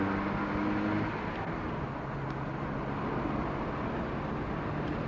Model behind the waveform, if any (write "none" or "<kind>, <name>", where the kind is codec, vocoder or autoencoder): none